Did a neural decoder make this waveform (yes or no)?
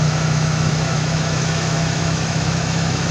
yes